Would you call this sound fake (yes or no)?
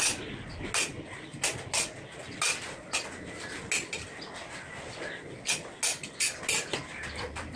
no